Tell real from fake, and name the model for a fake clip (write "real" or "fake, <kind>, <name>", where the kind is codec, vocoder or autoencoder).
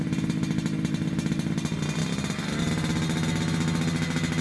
real